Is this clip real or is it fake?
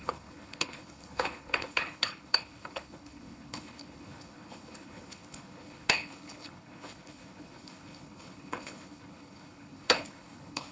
fake